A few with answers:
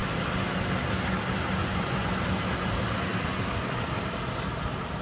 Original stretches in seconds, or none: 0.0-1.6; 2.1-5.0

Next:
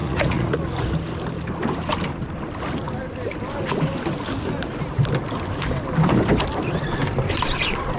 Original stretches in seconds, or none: 0.6-8.0

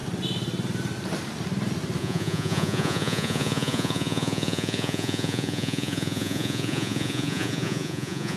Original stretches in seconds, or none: 0.0-2.0

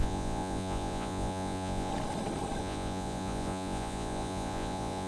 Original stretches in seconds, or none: 1.9-2.6

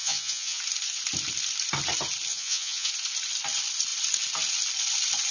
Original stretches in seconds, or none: 0.6-2.3; 2.9-5.3

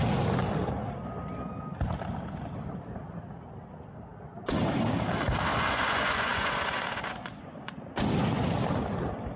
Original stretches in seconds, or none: 0.0-5.5; 7.7-9.4